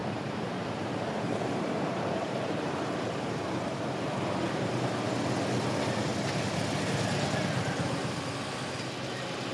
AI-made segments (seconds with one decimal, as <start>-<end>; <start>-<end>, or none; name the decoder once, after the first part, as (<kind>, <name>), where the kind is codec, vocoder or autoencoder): 0.0-4.9 (vocoder, BigVGAN v2)